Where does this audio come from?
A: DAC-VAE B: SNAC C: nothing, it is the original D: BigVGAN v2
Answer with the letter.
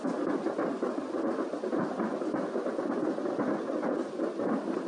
C